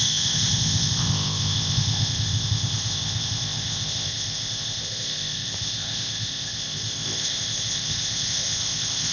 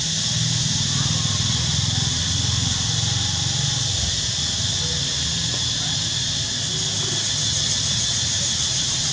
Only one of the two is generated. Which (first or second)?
first